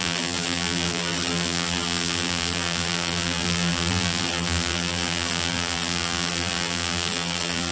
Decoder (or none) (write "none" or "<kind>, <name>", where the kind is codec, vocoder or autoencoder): vocoder, BigVGAN v2